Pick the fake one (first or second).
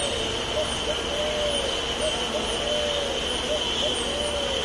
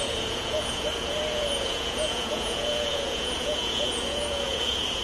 second